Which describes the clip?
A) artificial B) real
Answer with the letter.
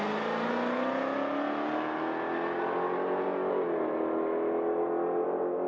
B